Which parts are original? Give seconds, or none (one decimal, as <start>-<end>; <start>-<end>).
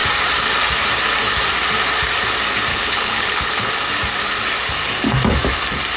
0.0-2.7; 3.7-6.0